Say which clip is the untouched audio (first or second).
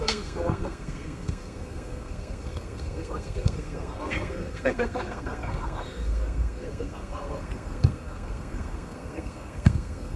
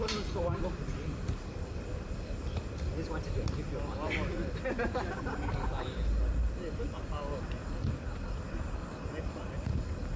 second